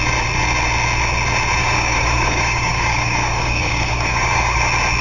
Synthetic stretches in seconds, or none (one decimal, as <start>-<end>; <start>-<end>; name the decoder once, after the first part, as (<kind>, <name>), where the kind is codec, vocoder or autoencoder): 1.6-4.6 (codec, DAC)